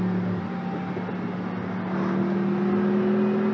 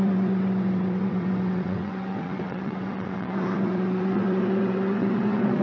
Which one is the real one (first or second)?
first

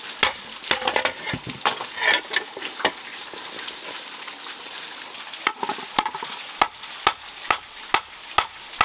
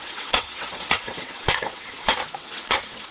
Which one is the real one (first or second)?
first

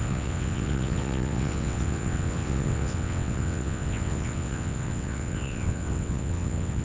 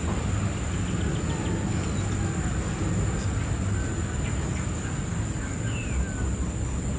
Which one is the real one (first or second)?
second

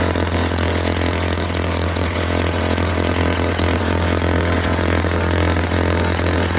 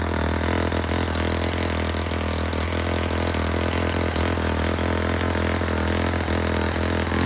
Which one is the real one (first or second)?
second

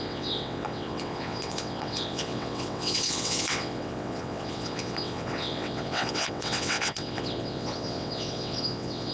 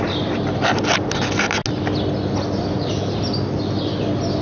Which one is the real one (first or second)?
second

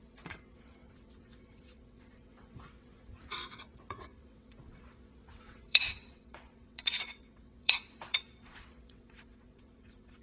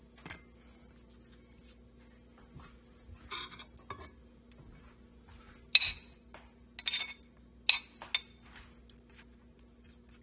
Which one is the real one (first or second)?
second